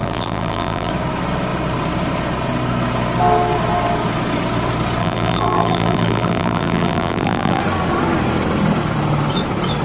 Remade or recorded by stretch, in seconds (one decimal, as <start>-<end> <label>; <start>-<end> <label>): 0.0-0.9 remade; 0.9-5.0 recorded; 5.0-7.6 remade; 7.6-9.8 recorded